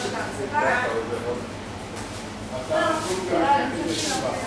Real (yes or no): yes